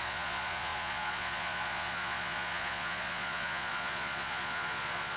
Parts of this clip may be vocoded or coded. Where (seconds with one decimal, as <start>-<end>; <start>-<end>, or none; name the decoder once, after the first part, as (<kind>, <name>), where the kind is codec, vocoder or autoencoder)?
0.0-5.2 (vocoder, Vocos)